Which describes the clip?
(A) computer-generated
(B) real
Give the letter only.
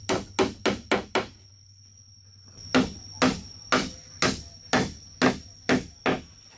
B